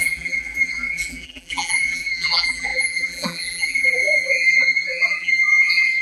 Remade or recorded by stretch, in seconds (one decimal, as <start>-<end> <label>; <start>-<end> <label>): 0.0-6.0 remade

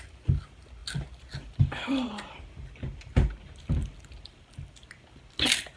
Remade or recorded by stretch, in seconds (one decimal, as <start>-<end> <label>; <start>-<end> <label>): 0.0-5.8 recorded

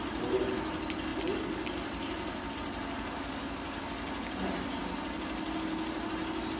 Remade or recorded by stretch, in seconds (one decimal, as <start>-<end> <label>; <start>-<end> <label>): 0.0-6.6 recorded